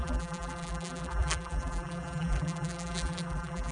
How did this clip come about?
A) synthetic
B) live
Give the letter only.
A